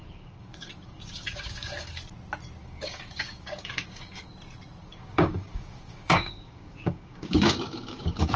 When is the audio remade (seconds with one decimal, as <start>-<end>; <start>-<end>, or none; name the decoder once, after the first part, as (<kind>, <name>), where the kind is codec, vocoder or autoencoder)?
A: 0.0-2.0 (codec, DAC); 2.6-4.3; 4.8-8.4